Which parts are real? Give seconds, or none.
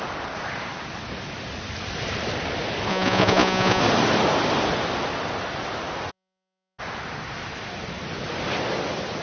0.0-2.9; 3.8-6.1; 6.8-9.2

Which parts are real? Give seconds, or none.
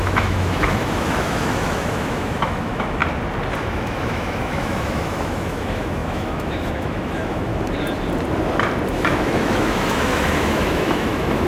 3.0-3.6; 7.5-8.9